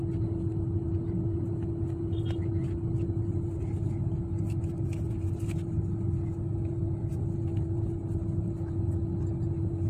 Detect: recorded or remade recorded